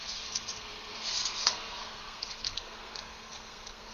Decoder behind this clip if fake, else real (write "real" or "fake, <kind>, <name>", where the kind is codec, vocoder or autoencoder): fake, codec, SNAC